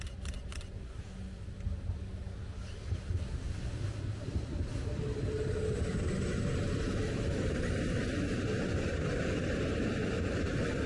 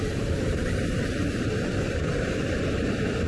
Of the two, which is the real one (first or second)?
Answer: first